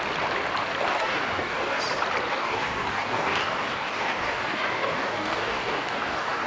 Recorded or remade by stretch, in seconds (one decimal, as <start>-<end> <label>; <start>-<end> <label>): 0.0-0.9 recorded; 0.9-1.8 remade; 1.8-2.3 recorded; 2.3-6.5 remade